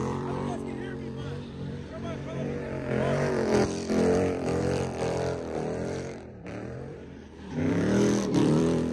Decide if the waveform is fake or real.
fake